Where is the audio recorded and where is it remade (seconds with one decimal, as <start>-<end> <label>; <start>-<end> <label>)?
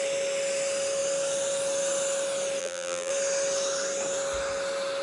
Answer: 0.0-2.6 recorded; 2.6-3.1 remade; 3.1-5.0 recorded